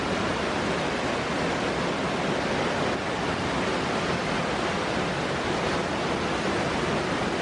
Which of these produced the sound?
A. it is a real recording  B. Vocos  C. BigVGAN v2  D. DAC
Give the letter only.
A